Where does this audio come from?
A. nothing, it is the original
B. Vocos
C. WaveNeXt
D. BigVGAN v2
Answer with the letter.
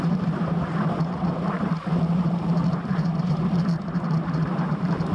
D